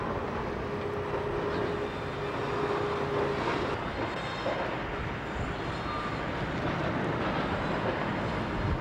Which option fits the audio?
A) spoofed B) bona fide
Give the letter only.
B